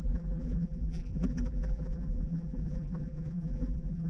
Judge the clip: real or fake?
fake